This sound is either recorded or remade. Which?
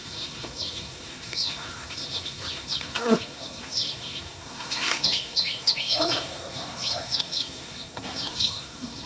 remade